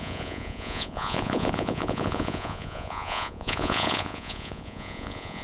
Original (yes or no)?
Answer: no